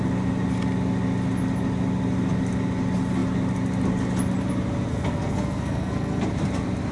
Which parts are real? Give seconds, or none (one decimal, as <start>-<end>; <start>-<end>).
0.0-4.9; 6.2-6.9